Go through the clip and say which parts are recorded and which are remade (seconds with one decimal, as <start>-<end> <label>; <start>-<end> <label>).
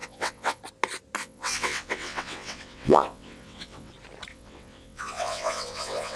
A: 0.0-0.6 remade; 0.6-1.2 recorded; 1.2-3.9 remade; 3.9-4.3 recorded; 4.3-6.2 remade